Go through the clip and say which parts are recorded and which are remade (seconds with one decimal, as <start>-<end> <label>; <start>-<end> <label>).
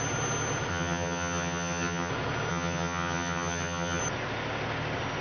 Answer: 0.0-0.7 recorded; 0.7-2.1 remade; 2.1-2.5 recorded; 2.5-4.0 remade; 4.0-5.2 recorded